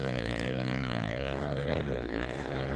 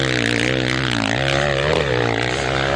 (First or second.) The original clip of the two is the second